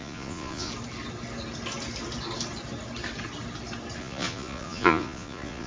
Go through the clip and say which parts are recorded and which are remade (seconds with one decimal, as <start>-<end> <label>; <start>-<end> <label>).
0.0-0.7 remade; 0.7-4.0 recorded; 4.0-5.7 remade